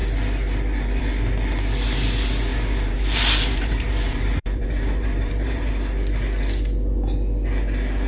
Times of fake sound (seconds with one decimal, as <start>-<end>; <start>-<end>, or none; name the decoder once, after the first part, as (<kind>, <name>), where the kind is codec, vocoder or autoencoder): 2.5-5.7 (vocoder, BigVGAN v2)